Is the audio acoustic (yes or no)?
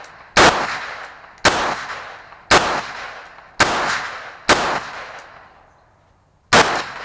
yes